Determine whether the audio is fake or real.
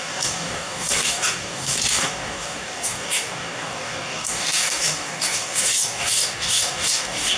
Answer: fake